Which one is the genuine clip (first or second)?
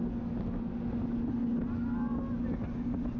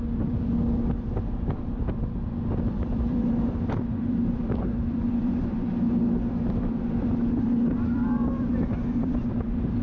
first